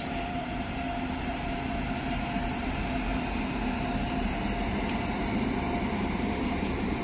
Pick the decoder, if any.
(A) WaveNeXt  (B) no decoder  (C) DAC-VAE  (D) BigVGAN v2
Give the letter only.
D